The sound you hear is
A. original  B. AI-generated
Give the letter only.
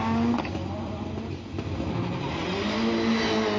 A